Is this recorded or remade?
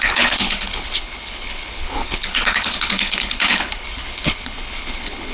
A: remade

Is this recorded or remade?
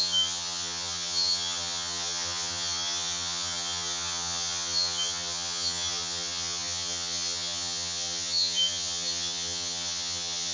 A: remade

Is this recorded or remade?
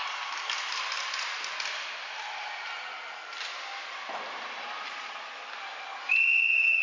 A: recorded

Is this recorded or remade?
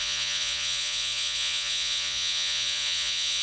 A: remade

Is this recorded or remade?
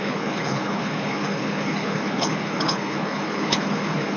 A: remade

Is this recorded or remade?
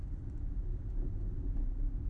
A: remade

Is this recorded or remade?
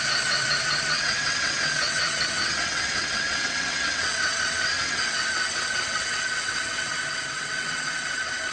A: remade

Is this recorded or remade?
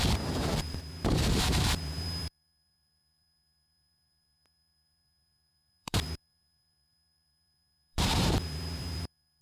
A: remade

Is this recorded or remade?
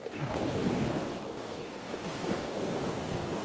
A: remade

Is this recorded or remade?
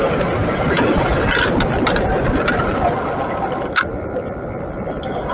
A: recorded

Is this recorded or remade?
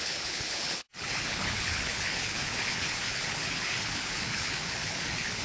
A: remade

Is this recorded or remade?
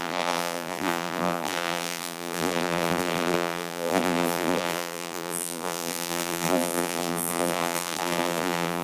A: remade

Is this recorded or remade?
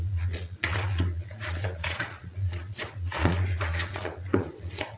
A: remade